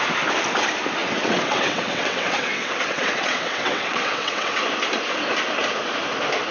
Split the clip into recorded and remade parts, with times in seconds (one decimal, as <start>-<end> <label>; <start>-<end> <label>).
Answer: 0.0-1.0 recorded; 1.0-4.6 remade; 4.6-6.5 recorded